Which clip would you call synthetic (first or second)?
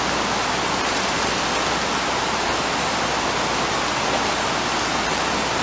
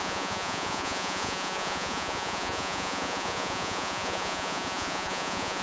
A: second